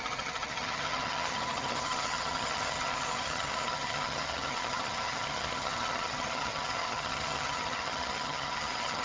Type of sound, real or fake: fake